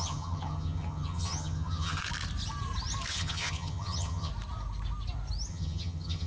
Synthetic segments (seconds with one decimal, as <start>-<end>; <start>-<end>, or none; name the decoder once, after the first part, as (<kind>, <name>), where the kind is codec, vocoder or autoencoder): 0.0-2.0 (vocoder, HiFi-GAN); 3.1-4.3; 5.5-6.3